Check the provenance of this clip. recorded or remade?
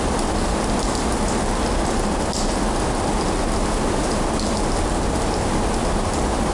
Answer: recorded